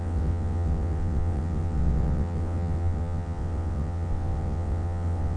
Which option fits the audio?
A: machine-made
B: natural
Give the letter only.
A